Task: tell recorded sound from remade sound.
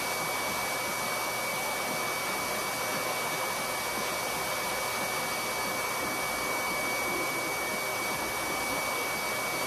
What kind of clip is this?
recorded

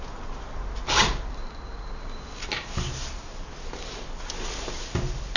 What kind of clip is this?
recorded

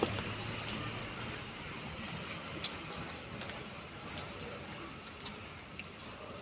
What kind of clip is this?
recorded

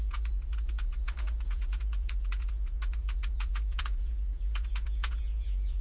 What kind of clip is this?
remade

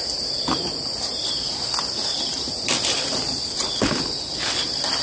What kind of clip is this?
recorded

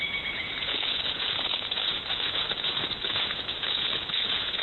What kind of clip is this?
remade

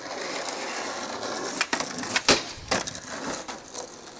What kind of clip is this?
recorded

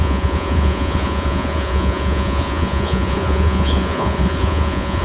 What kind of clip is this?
remade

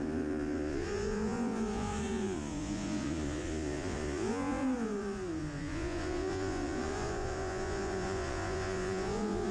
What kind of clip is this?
remade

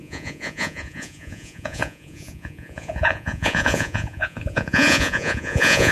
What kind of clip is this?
remade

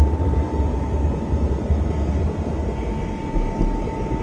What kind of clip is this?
recorded